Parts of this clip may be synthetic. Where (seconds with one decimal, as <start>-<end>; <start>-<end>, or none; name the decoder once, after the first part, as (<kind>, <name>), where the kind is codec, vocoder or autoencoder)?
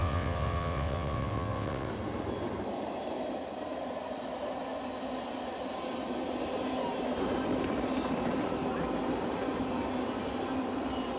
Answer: 0.0-1.9 (vocoder, WaveNeXt)